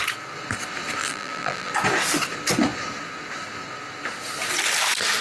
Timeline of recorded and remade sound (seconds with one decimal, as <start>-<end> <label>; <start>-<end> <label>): 0.0-1.0 recorded; 1.0-1.7 remade; 1.7-5.2 recorded